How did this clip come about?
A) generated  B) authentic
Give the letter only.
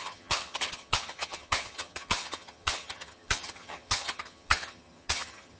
A